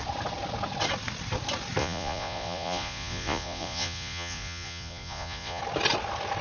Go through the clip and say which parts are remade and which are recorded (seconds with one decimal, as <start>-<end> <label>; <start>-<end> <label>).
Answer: 0.0-1.8 recorded; 1.8-5.6 remade; 5.6-6.4 recorded